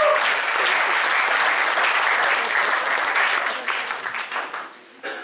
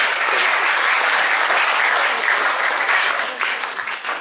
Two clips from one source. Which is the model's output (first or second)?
second